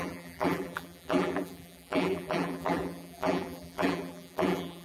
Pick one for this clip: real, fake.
fake